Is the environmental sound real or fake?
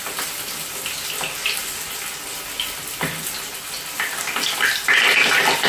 real